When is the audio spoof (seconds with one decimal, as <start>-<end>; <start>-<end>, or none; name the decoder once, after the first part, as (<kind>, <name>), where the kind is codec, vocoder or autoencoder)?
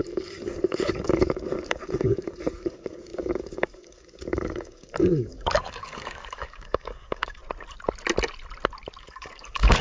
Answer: 0.0-7.4 (codec, DAC); 9.0-9.8